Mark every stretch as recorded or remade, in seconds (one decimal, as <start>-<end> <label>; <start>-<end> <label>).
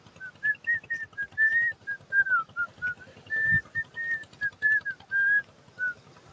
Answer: 0.0-6.3 recorded